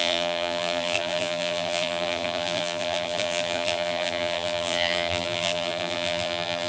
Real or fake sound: fake